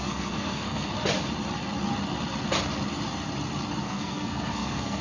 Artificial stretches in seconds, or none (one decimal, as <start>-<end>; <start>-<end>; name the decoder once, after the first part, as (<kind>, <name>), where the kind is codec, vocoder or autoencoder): 0.0-0.9 (codec, SNAC); 3.8-5.0